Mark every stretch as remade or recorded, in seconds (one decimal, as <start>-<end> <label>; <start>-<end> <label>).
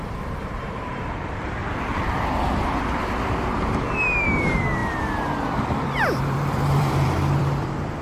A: 0.0-1.6 remade; 1.6-2.8 recorded; 2.8-4.8 remade; 4.8-5.4 recorded; 5.4-8.0 remade